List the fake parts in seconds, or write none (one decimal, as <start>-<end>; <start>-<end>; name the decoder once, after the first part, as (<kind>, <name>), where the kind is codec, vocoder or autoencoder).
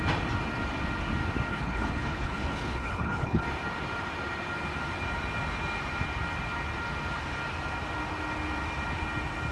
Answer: 1.5-3.4 (codec, HILCodec)